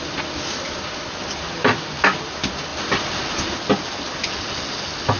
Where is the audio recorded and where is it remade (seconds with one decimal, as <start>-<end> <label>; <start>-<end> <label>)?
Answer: 0.0-5.2 recorded